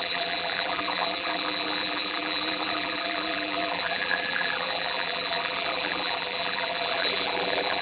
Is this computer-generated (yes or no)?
yes